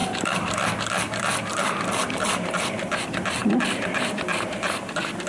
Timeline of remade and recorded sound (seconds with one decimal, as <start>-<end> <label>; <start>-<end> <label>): 0.0-5.3 remade